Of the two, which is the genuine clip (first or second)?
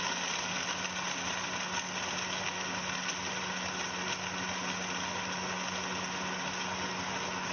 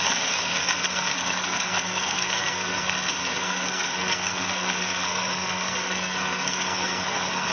first